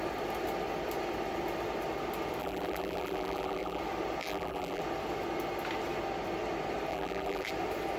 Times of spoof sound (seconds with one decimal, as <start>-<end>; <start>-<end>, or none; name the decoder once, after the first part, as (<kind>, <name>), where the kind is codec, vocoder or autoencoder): 2.4-3.8 (vocoder, BigVGAN v2); 4.2-4.8; 6.9-7.5